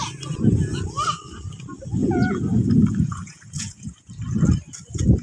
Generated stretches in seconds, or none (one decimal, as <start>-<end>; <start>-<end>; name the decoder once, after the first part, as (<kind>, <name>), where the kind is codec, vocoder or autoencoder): 2.0-4.1 (vocoder, Vocos)